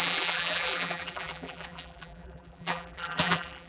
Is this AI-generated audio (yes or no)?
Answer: yes